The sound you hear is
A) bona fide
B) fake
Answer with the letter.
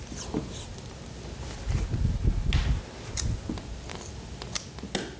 A